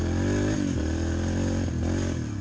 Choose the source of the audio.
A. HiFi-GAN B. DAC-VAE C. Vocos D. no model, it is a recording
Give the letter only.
D